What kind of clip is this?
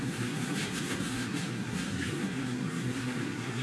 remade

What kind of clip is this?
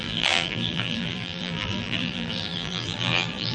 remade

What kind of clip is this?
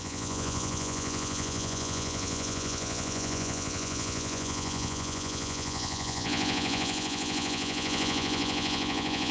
remade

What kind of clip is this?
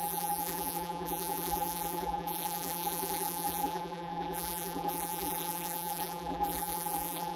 remade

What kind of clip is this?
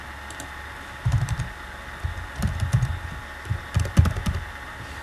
recorded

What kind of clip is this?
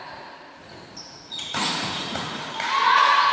remade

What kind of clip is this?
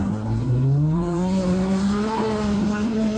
remade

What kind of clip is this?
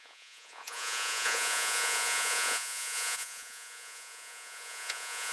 remade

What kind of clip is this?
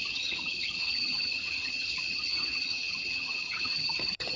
remade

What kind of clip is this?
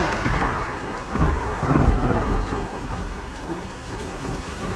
remade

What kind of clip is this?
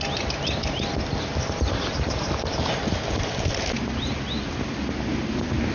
recorded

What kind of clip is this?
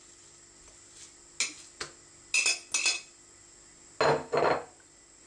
recorded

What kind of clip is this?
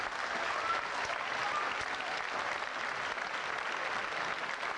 recorded